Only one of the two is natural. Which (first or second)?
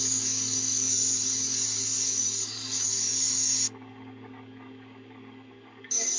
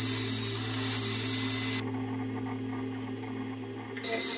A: second